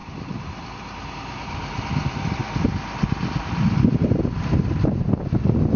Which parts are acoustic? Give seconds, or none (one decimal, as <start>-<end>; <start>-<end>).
0.0-5.8